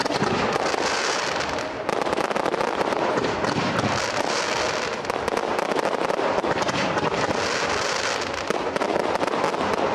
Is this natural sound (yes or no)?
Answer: yes